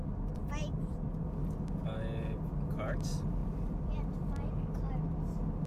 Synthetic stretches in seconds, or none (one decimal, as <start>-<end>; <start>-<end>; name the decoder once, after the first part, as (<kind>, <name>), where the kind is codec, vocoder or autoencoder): 0.4-1.3 (vocoder, BigVGAN v2); 3.4-4.9